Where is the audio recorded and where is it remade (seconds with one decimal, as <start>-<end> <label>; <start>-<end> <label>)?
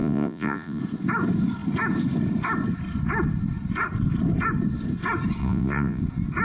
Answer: 0.0-0.8 remade; 0.8-5.4 recorded; 5.4-6.0 remade; 6.0-6.4 recorded